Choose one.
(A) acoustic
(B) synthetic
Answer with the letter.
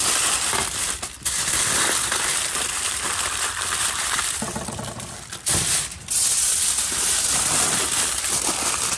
B